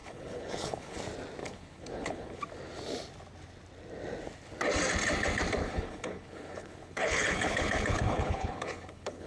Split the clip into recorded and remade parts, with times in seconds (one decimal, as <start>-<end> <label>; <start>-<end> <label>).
0.0-1.0 remade; 1.0-1.4 recorded; 1.4-2.4 remade; 2.4-5.6 recorded; 5.6-9.3 remade